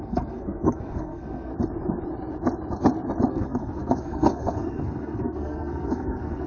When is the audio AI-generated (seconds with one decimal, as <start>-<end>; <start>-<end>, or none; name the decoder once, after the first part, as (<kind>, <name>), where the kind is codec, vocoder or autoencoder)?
0.0-1.5 (codec, SNAC); 3.3-6.5